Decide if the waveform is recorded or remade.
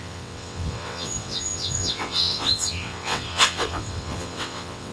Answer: remade